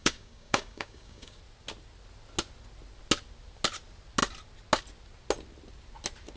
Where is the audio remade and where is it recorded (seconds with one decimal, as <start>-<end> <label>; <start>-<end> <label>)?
0.0-1.4 remade; 1.4-6.4 recorded